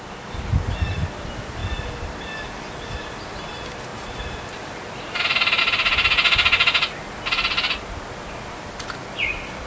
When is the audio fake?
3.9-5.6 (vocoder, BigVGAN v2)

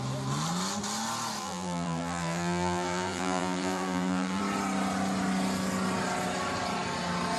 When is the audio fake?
1.4-4.4 (vocoder, BigVGAN v2)

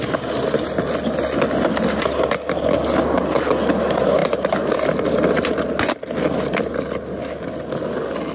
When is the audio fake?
none

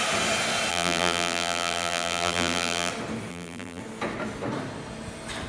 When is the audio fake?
0.7-2.9 (vocoder, BigVGAN v2); 3.3-3.8

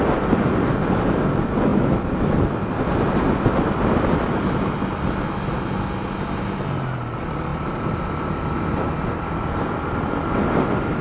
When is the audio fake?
none

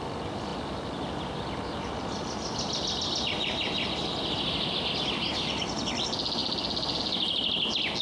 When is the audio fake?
none